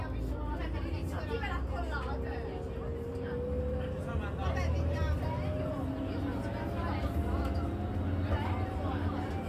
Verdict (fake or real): real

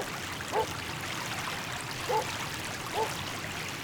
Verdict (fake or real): real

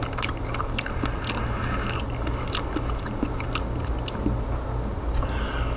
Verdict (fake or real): real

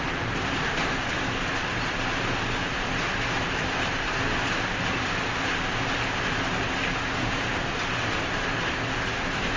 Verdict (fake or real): real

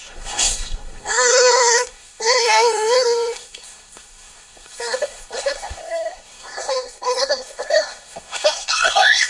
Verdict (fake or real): fake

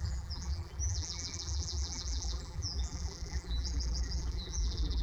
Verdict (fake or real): fake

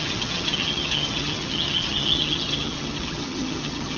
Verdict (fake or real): fake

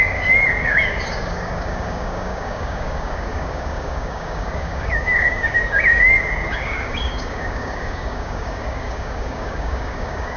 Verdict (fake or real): fake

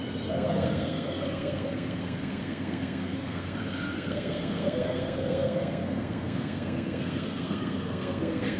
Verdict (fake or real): fake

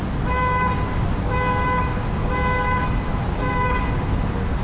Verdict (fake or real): real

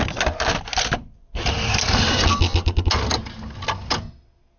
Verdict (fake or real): real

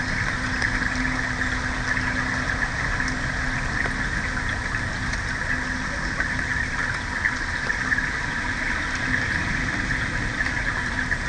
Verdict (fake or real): real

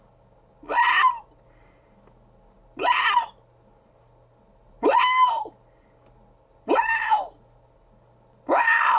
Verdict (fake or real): real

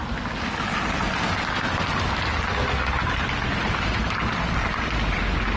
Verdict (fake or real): real